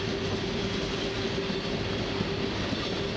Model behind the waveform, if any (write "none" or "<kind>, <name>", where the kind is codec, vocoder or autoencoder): none